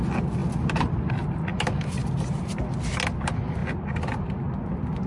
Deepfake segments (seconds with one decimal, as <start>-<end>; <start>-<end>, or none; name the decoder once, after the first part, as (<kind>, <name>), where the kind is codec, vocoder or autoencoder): 0.4-1.1 (vocoder, BigVGAN v2); 1.5-2.1